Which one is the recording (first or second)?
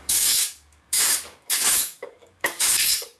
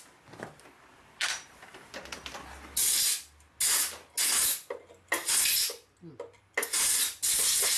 second